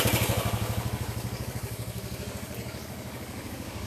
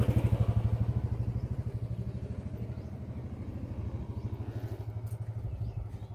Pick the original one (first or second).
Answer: second